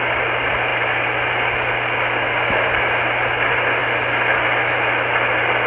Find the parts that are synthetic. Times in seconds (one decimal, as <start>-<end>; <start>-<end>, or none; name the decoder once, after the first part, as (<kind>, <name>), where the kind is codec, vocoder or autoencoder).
none